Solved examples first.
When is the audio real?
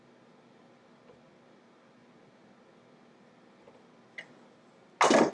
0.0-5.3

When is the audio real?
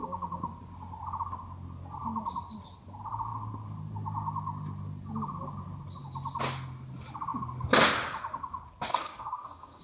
0.0-8.9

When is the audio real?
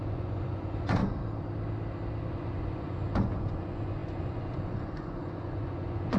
1.0-2.3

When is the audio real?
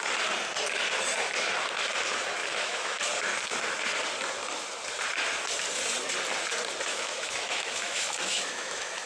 0.0-2.4; 3.0-6.9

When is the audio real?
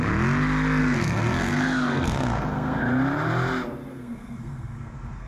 0.0-0.8; 2.8-3.9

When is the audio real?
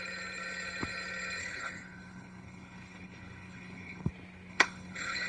0.0-1.4; 4.1-4.5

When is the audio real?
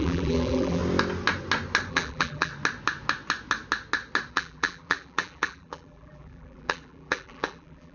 0.8-1.9; 2.5-4.3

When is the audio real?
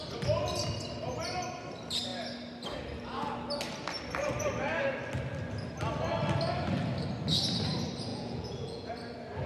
0.0-8.1; 8.9-9.5